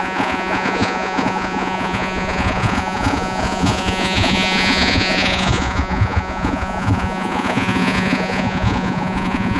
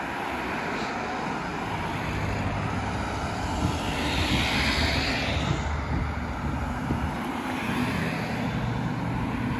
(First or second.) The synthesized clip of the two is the first